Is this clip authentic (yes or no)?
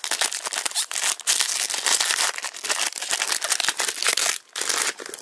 yes